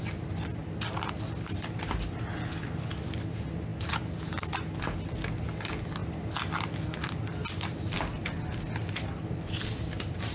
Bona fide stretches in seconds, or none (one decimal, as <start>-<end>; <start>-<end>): 0.0-10.3

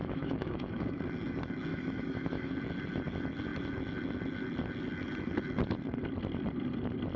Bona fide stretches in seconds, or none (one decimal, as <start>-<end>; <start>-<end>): 1.0-1.7; 2.5-7.2

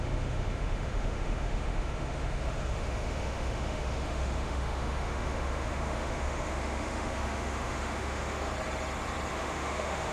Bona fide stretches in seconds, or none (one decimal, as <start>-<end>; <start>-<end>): 8.5-9.3

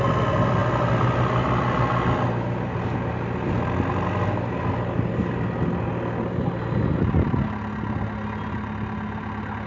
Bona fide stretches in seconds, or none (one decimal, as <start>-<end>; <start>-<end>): 0.0-9.7

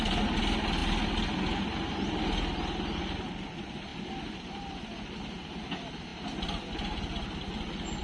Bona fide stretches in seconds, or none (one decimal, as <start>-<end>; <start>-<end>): 0.0-8.0

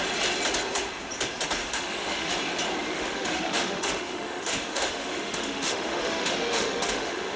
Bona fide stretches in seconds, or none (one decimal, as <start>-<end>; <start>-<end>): 0.0-1.6; 2.3-2.9